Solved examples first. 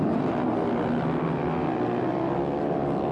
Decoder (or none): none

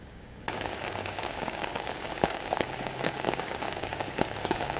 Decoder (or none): codec, DAC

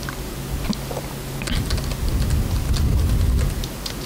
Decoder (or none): none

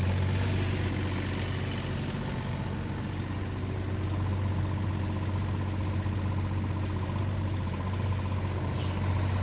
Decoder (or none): none